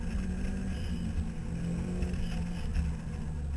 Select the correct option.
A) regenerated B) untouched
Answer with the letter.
B